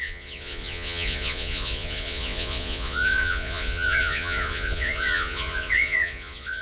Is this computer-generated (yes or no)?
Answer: yes